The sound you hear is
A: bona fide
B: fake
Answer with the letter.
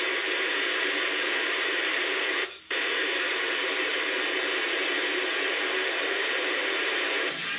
B